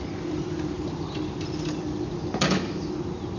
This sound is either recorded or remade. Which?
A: recorded